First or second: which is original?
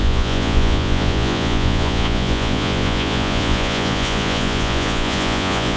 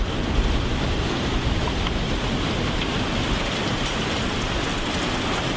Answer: second